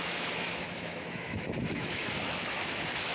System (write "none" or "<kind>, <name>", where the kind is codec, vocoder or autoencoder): autoencoder, DAC-VAE